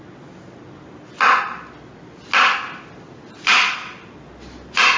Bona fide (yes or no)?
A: yes